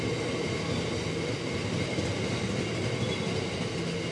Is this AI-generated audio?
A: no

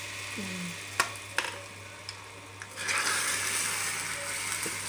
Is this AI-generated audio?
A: no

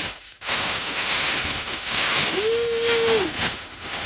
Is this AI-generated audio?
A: yes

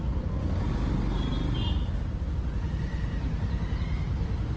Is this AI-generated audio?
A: no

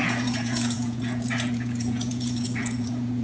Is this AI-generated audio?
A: yes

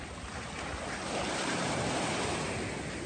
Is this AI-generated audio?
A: no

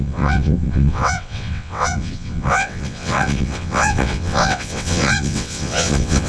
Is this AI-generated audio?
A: yes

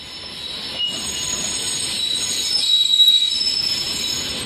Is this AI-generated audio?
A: no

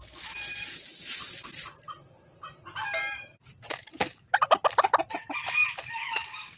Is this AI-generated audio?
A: no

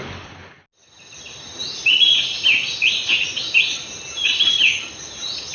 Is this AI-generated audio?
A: no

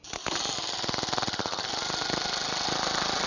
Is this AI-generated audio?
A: no